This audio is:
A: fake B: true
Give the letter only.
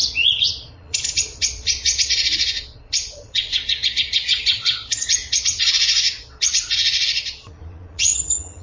A